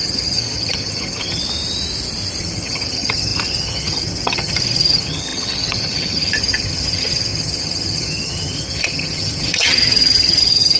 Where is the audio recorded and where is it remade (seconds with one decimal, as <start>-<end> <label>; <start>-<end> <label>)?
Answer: 0.0-1.4 remade; 1.4-2.4 recorded; 2.4-10.8 remade